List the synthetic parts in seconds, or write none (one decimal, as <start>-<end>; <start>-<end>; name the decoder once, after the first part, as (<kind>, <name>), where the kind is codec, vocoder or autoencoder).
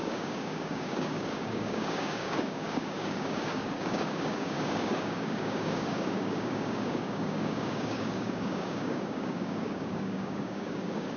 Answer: 0.0-11.2 (codec, DAC)